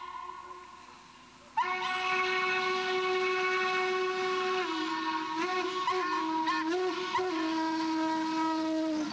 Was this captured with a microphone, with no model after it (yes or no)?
yes